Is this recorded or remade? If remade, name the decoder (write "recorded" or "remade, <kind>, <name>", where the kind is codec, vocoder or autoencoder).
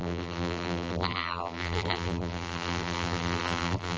remade, vocoder, BigVGAN v2